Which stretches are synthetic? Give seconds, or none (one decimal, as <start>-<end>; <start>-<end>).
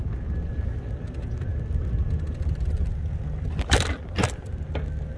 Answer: none